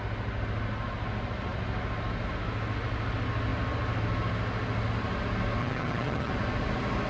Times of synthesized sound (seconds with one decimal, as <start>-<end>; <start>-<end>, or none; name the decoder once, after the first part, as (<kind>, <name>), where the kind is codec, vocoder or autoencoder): 5.6-6.3 (vocoder, HiFi-GAN)